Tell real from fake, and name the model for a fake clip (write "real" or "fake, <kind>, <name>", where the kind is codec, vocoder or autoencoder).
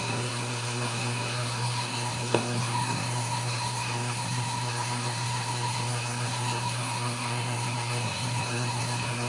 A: fake, codec, SNAC